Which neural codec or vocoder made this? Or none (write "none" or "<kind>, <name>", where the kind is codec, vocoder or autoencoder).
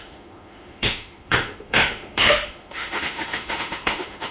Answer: autoencoder, DAC-VAE